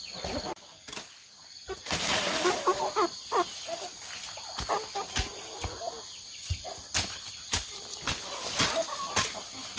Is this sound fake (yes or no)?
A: no